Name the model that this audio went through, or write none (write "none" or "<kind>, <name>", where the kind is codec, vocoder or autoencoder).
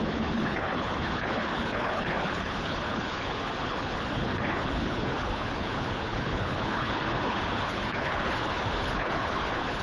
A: codec, HILCodec